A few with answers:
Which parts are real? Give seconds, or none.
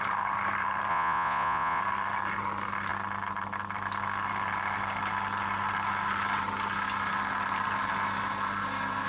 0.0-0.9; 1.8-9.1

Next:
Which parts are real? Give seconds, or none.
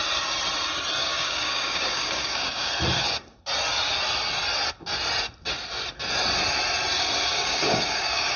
0.0-1.0; 2.7-7.3